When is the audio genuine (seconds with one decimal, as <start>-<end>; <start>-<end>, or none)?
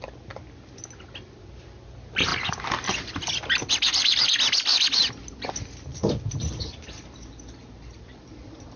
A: 0.0-4.7; 5.5-5.9